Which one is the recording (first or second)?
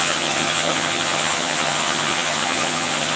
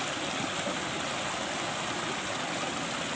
second